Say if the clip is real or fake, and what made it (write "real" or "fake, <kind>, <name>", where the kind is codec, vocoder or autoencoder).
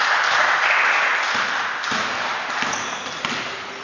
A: real